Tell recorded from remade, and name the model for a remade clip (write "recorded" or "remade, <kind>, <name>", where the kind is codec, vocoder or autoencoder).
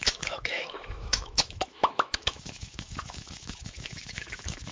remade, autoencoder, DAC-VAE